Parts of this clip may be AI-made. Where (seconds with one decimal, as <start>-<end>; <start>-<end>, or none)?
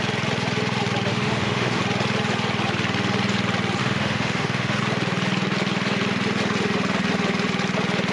1.1-1.8; 3.8-4.8